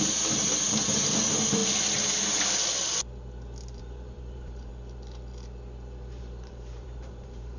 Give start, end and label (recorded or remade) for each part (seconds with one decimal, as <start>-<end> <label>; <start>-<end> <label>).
0.0-1.6 remade; 1.6-3.8 recorded; 3.8-4.7 remade; 4.7-6.2 recorded; 6.2-7.6 remade